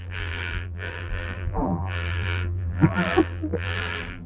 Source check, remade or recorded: remade